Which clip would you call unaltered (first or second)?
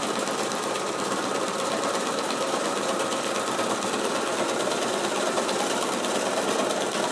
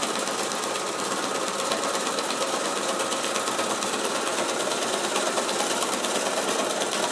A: second